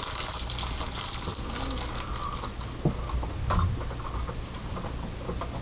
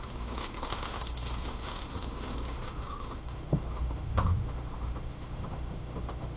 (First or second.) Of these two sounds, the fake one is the second